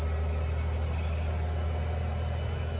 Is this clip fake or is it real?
real